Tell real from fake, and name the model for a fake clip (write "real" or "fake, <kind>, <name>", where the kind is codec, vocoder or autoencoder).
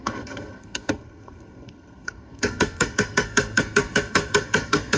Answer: fake, codec, SNAC